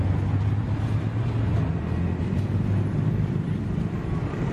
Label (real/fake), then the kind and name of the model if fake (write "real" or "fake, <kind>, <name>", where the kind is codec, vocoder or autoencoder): fake, vocoder, BigVGAN v2